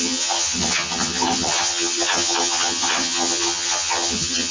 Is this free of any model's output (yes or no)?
no